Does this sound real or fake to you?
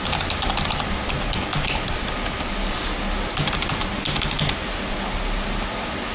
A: real